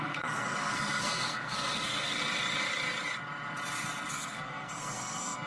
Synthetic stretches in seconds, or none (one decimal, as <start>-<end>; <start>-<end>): 0.0-2.2; 4.1-5.5